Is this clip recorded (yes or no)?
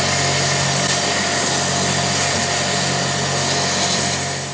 yes